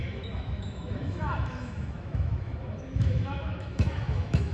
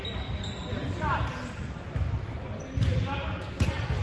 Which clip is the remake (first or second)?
first